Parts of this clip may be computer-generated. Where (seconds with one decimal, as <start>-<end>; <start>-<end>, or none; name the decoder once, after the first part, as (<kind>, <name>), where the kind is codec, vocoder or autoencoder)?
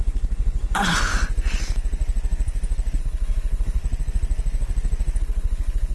0.0-1.1 (codec, HILCodec); 3.0-3.8; 5.2-5.9